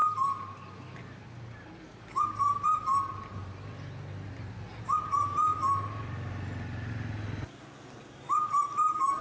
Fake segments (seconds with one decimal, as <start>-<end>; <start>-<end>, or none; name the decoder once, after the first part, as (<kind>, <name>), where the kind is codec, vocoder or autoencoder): none